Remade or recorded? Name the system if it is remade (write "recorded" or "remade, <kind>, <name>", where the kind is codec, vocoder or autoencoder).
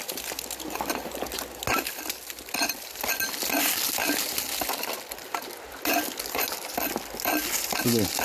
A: recorded